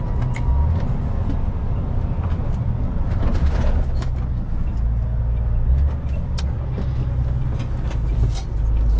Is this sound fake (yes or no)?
no